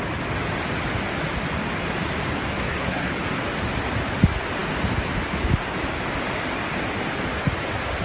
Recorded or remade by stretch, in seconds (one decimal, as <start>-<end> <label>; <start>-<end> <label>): 0.0-2.6 recorded; 2.6-3.1 remade; 3.1-8.0 recorded